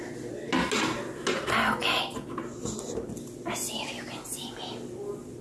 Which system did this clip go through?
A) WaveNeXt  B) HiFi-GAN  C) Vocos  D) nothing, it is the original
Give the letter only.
D